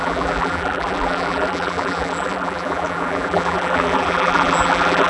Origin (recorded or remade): remade